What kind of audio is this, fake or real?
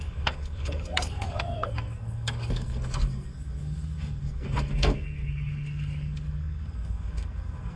fake